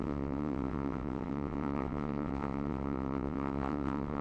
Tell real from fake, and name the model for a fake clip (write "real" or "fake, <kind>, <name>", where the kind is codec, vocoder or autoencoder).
fake, vocoder, WaveNeXt